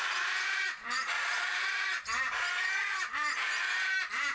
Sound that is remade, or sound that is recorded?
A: remade